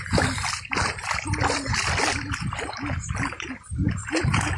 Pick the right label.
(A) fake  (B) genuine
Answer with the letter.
B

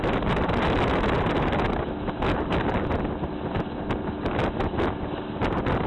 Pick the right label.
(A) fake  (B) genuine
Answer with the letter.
B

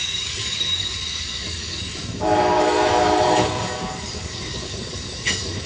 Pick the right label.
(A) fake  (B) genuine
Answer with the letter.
A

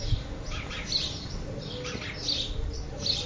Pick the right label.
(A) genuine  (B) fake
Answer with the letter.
A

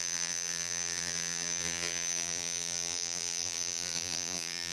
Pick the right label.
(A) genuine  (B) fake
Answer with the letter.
B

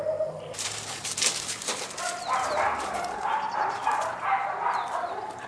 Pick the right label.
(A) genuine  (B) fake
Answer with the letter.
B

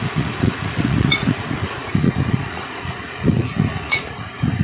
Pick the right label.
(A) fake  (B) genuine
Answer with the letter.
A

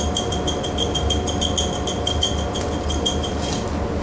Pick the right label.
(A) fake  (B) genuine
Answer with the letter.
B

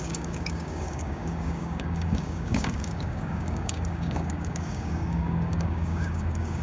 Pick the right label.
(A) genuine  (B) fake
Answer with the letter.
B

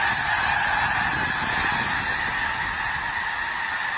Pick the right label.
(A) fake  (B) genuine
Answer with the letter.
B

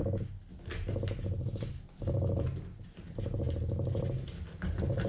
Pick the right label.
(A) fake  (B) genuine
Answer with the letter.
B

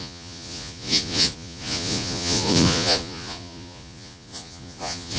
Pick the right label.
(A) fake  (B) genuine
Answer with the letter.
A